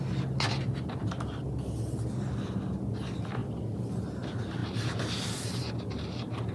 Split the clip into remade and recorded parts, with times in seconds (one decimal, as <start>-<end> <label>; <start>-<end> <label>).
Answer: 0.0-1.0 recorded; 1.0-1.5 remade; 1.5-4.6 recorded; 4.6-5.7 remade; 5.7-6.5 recorded